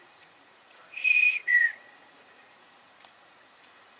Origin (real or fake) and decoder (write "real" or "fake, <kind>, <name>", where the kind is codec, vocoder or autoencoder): fake, vocoder, Vocos